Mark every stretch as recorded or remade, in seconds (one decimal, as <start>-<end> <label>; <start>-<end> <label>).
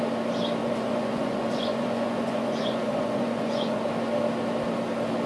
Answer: 0.0-0.6 recorded; 0.6-3.8 remade; 3.8-5.3 recorded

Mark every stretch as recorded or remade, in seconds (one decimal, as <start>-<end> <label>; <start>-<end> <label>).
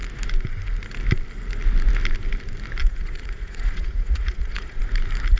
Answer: 0.0-2.8 recorded; 2.8-4.8 remade; 4.8-5.4 recorded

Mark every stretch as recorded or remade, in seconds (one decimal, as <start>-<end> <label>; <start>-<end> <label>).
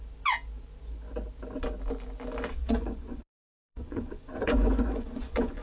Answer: 0.0-2.5 recorded; 2.5-5.6 remade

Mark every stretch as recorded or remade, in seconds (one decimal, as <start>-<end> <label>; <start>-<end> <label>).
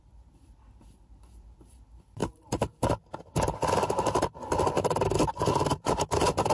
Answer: 0.0-6.5 recorded